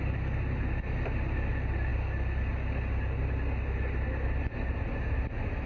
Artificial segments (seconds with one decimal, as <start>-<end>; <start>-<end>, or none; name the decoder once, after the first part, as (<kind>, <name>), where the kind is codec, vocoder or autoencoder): none